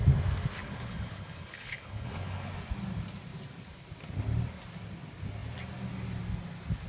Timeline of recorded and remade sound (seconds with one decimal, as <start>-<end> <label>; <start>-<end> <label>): 0.0-0.6 recorded; 0.6-2.5 remade; 2.5-6.9 recorded